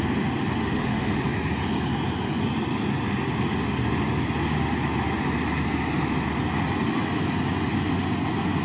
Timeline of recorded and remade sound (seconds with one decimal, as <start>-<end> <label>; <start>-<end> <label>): 0.0-0.6 recorded; 0.6-1.2 remade; 1.2-8.6 recorded